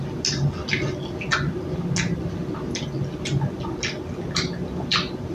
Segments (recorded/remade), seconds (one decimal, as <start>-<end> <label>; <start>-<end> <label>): 0.0-5.3 recorded